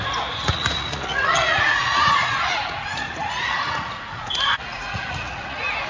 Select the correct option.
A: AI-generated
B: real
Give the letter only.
A